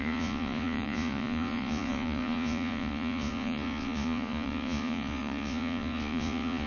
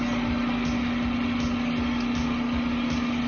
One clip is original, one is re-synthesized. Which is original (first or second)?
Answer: second